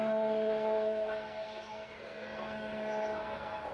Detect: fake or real fake